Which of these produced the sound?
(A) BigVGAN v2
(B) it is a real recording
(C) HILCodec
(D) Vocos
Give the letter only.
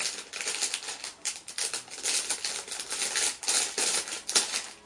B